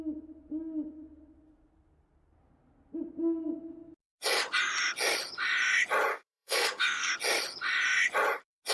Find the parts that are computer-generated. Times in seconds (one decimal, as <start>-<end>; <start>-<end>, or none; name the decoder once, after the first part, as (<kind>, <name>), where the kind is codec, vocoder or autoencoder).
6.1-7.1 (codec, SNAC)